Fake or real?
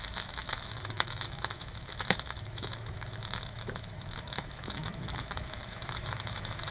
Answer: fake